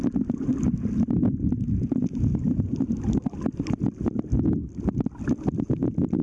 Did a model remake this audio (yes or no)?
no